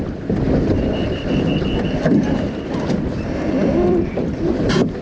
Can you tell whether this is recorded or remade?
remade